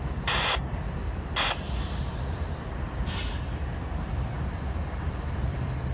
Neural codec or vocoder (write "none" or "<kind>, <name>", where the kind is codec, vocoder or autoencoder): vocoder, BigVGAN v2